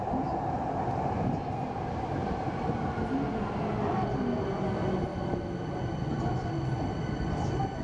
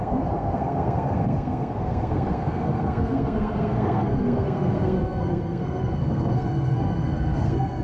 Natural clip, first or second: first